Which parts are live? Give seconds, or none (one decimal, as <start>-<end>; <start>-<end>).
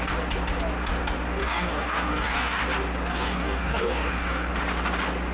0.0-1.4; 2.6-3.1; 4.5-5.3